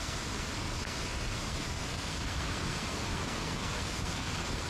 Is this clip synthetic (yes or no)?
yes